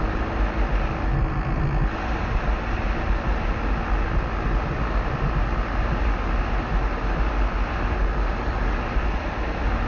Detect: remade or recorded recorded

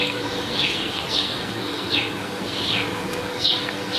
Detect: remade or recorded remade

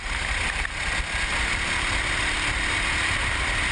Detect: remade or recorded recorded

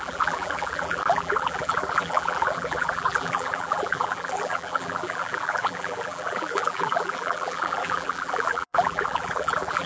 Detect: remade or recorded remade